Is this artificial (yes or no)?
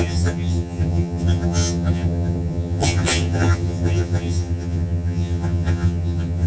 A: yes